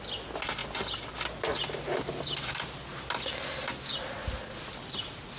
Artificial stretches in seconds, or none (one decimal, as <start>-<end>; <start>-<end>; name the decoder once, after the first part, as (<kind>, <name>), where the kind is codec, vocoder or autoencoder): none